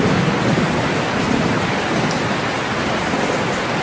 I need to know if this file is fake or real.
real